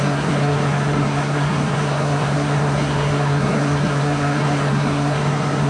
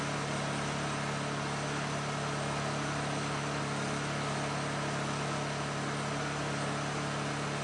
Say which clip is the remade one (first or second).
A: first